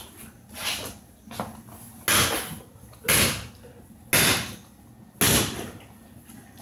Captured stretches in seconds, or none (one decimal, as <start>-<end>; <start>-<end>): 0.0-6.6